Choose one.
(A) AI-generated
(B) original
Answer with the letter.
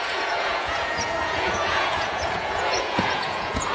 A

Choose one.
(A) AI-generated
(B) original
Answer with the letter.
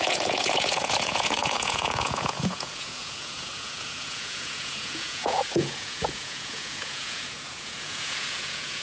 A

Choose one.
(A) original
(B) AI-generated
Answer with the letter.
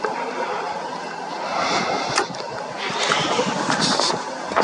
A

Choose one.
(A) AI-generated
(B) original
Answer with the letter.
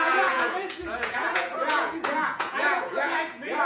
A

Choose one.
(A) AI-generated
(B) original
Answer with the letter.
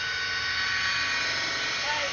B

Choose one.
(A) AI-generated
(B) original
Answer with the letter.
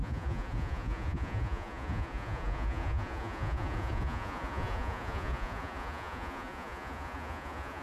A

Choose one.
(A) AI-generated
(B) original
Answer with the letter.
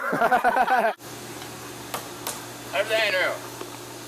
B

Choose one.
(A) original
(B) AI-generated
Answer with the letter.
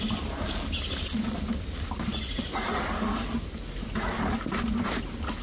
A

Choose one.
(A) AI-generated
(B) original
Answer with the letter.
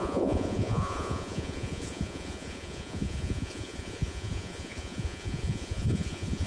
A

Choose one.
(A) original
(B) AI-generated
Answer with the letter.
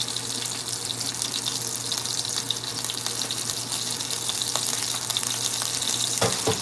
A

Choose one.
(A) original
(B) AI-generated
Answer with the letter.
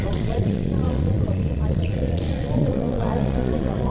B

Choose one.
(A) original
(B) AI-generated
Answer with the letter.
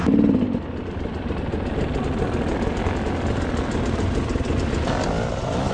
A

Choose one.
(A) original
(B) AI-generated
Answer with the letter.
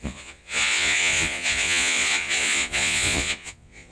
B